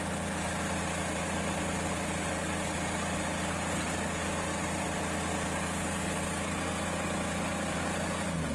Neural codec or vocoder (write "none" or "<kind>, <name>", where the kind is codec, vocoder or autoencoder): none